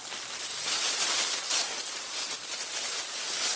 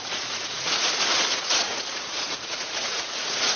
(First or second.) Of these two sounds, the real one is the first